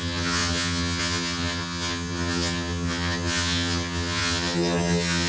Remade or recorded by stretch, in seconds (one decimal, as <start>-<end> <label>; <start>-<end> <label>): 0.0-5.3 remade